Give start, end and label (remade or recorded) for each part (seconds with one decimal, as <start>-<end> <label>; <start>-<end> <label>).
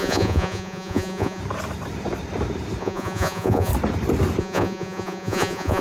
0.0-1.4 remade; 1.4-2.8 recorded; 2.8-3.7 remade; 3.7-4.4 recorded; 4.4-5.8 remade